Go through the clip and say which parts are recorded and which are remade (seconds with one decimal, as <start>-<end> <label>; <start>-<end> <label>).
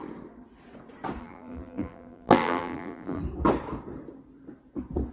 0.0-1.2 recorded; 1.2-3.2 remade; 3.2-5.1 recorded